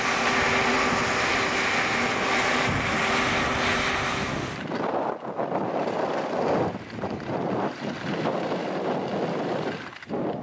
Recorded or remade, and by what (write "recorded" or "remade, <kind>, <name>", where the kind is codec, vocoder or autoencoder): recorded